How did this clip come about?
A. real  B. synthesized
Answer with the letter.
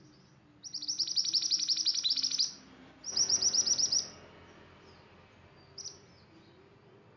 A